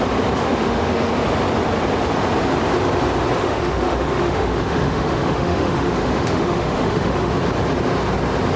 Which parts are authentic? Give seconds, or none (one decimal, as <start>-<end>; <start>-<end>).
0.0-0.4; 1.1-3.4; 7.3-8.6

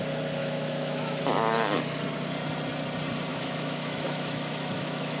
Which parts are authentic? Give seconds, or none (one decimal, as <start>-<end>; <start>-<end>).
0.0-0.4; 1.2-3.3

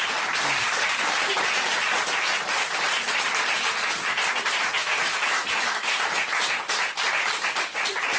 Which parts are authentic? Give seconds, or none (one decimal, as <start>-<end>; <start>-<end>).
0.0-4.8; 6.0-8.2